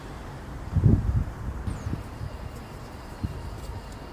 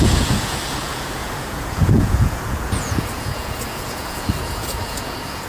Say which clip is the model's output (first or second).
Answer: second